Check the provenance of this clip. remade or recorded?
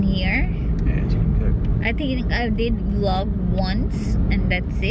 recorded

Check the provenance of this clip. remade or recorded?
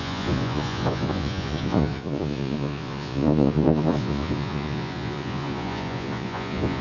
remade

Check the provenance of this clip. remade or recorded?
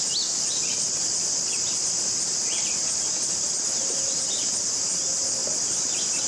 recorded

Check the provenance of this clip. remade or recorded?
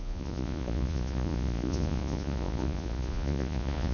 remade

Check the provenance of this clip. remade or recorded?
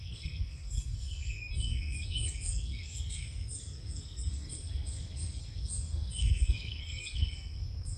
remade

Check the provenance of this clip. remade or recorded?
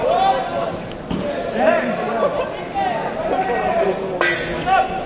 recorded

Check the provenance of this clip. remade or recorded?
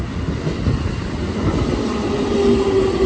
recorded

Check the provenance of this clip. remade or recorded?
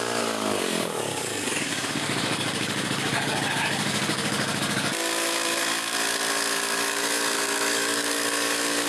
remade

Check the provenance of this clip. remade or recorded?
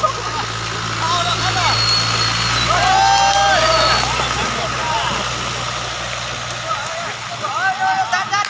recorded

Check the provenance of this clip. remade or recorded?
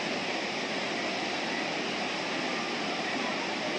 remade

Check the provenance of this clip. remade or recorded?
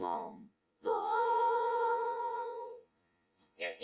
remade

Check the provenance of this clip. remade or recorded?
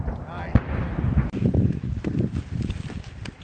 recorded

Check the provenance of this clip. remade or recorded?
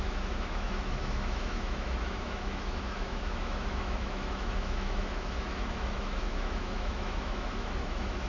remade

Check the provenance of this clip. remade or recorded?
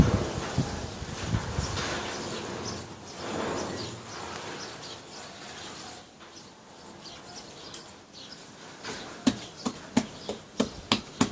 recorded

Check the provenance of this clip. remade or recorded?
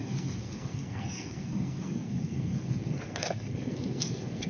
remade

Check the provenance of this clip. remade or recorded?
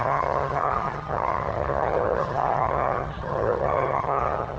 remade